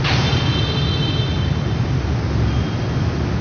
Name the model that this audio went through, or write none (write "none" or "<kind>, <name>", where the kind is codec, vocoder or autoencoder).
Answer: none